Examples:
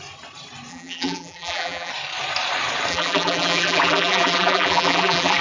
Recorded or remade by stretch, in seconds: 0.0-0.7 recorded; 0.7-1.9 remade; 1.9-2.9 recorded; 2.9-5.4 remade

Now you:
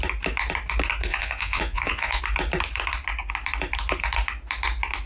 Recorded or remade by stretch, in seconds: 0.0-1.1 recorded; 1.1-2.2 remade; 2.2-5.1 recorded

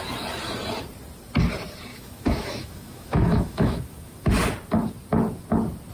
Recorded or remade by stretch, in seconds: 0.0-1.9 recorded; 1.9-4.3 remade; 4.3-5.9 recorded

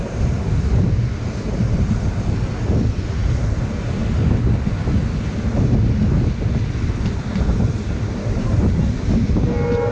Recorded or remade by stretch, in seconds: 0.0-9.9 recorded

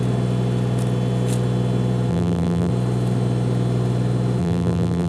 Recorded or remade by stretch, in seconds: 0.0-2.1 recorded; 2.1-2.7 remade; 2.7-4.4 recorded; 4.4-5.1 remade

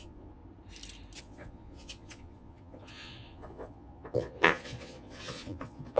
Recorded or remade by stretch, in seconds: 0.0-0.4 remade; 0.4-1.2 recorded; 1.2-6.0 remade

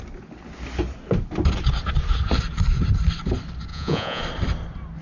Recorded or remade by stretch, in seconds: 0.0-3.7 recorded; 3.7-4.2 remade; 4.2-5.0 recorded